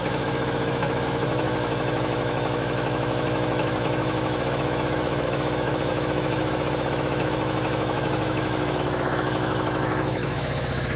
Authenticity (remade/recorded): remade